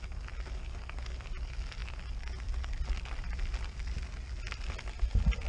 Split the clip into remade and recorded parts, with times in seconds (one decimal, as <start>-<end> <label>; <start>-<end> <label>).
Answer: 0.0-5.5 recorded